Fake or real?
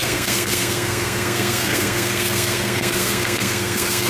fake